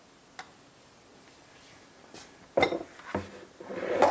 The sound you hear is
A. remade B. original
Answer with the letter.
B